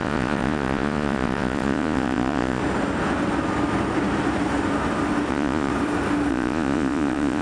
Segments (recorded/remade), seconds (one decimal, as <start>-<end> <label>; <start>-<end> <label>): 0.0-2.6 remade; 2.6-5.3 recorded; 5.3-5.7 remade; 5.7-6.3 recorded; 6.3-7.4 remade

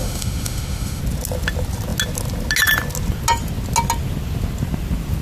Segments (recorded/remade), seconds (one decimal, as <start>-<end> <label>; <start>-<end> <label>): 0.0-1.0 remade; 1.0-5.2 recorded